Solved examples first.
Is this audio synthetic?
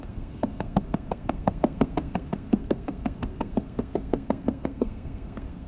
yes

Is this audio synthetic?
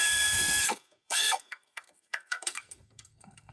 yes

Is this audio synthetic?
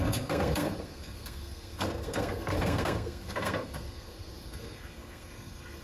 yes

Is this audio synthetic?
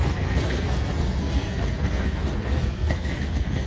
yes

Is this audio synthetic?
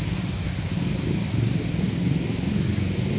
no